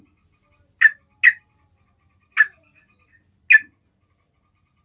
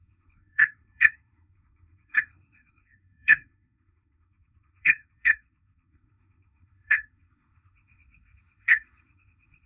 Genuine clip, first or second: first